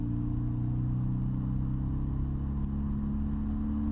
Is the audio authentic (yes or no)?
yes